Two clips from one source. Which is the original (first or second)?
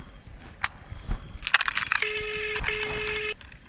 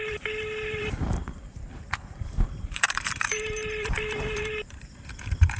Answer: first